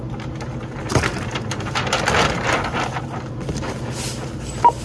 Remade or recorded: recorded